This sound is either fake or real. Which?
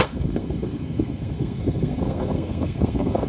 fake